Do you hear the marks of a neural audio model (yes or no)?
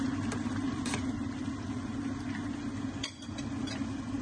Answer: no